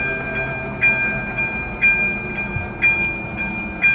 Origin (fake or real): real